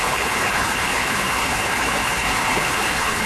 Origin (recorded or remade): remade